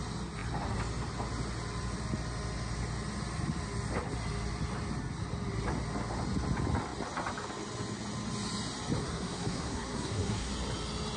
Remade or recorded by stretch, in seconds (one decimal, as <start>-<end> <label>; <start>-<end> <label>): 0.0-9.0 recorded; 9.0-10.5 remade; 10.5-11.2 recorded